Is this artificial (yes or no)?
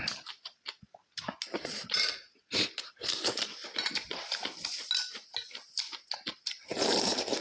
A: no